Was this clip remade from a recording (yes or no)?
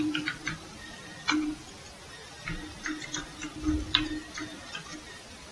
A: no